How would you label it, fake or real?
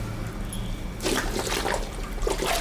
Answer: real